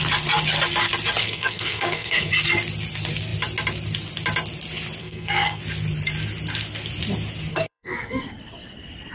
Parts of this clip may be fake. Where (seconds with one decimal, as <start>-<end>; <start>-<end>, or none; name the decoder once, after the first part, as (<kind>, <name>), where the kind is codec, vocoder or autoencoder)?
1.2-2.3 (codec, SNAC); 5.0-5.6; 7.5-8.3